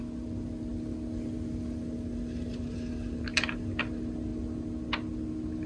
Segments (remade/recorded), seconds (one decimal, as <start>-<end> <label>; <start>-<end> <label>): 0.0-5.7 recorded